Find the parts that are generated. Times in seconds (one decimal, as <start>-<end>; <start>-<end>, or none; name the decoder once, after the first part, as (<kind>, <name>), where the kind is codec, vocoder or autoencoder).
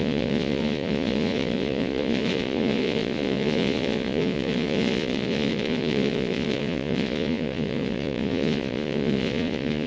0.0-9.9 (vocoder, Vocos)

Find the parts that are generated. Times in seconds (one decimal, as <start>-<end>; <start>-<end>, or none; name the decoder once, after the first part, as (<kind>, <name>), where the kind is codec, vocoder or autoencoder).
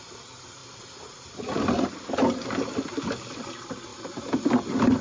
none